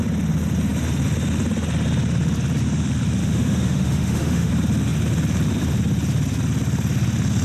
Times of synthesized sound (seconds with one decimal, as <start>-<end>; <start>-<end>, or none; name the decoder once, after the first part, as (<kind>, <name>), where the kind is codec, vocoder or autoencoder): 3.2-4.5 (autoencoder, DAC-VAE)